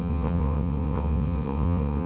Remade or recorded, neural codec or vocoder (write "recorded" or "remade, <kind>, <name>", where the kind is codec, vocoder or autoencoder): remade, vocoder, WaveNeXt